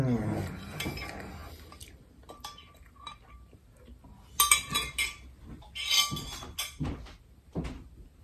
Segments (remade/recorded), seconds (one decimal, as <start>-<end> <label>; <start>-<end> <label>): 0.0-8.2 recorded